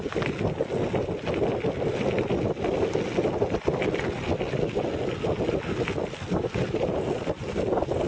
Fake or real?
real